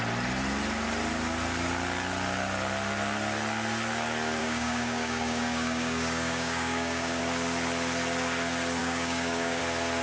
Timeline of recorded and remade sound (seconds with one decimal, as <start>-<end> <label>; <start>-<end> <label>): 0.0-4.4 recorded; 4.4-7.2 remade; 7.2-8.8 recorded; 8.8-9.6 remade; 9.6-10.0 recorded